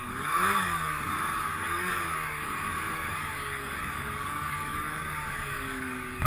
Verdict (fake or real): fake